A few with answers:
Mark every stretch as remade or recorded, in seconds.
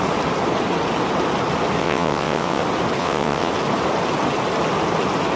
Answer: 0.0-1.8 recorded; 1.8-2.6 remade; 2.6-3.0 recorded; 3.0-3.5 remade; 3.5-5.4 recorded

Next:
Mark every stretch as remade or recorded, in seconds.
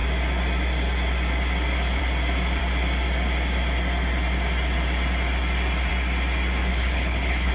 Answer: 0.0-6.7 recorded; 6.7-7.5 remade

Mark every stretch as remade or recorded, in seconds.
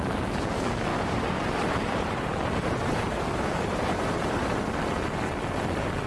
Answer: 0.0-0.9 recorded; 0.9-4.6 remade; 4.6-6.1 recorded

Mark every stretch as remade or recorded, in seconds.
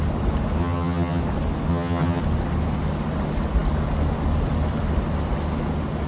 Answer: 0.0-0.6 recorded; 0.6-1.2 remade; 1.2-1.7 recorded; 1.7-2.2 remade; 2.2-6.1 recorded